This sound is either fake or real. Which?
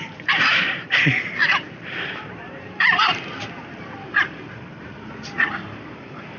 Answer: fake